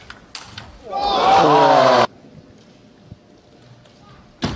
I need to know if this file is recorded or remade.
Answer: recorded